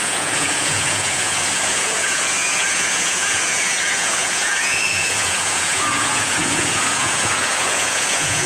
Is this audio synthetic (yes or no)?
yes